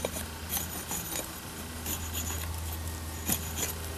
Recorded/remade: recorded